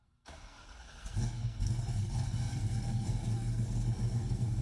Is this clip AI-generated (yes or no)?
yes